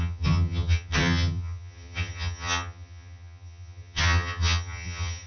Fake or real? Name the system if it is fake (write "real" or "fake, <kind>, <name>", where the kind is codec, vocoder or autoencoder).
fake, vocoder, HiFi-GAN